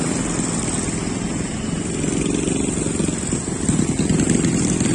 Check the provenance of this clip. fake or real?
real